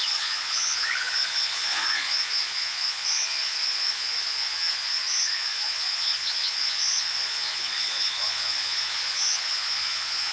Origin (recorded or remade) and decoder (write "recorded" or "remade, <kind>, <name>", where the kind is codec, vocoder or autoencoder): remade, vocoder, Vocos